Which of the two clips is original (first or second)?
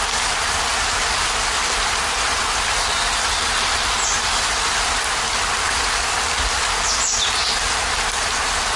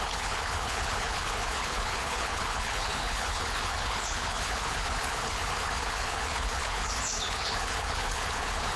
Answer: first